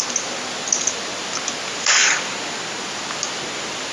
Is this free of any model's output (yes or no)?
yes